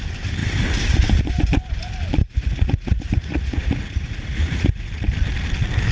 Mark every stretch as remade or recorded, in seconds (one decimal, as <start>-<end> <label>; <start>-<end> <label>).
0.0-2.2 recorded; 2.2-4.9 remade; 4.9-5.9 recorded